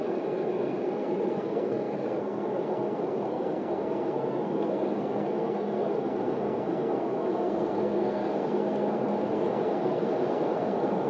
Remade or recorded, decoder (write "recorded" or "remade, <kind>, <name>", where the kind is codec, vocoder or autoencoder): remade, codec, SNAC